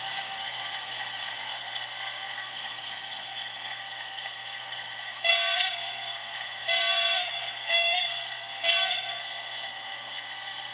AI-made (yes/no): yes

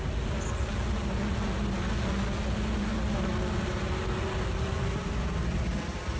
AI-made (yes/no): no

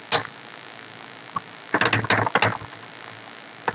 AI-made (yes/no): no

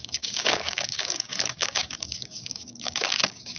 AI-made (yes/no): yes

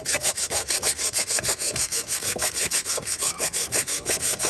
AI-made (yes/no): yes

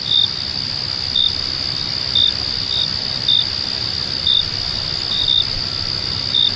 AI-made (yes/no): no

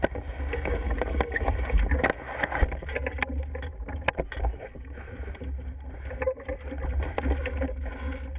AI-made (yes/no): no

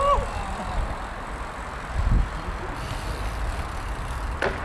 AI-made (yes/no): no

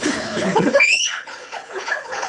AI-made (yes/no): yes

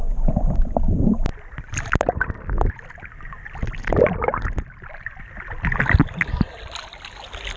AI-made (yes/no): no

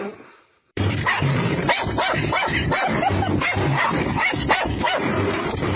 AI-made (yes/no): yes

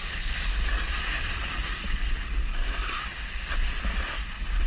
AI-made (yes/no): no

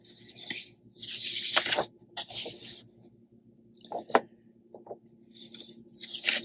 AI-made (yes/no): no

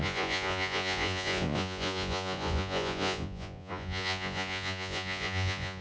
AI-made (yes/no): yes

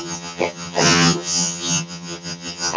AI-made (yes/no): yes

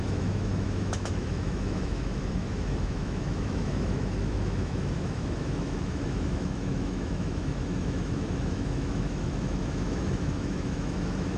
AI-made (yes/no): yes